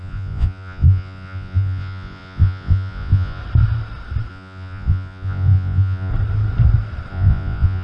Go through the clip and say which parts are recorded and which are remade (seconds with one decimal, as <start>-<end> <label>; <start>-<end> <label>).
0.0-3.4 remade; 3.4-4.3 recorded; 4.3-6.1 remade; 6.1-7.1 recorded; 7.1-7.8 remade